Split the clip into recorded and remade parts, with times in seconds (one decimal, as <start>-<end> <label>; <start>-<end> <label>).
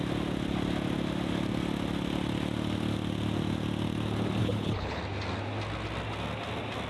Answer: 0.0-4.4 recorded; 4.4-5.0 remade; 5.0-6.9 recorded